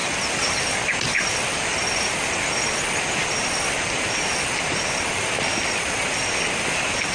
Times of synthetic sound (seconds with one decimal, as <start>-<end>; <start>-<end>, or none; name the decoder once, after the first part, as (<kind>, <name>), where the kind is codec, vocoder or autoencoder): none